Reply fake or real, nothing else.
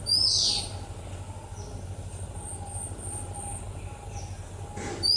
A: real